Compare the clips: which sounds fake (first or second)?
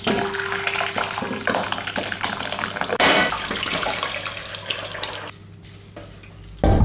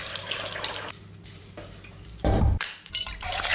second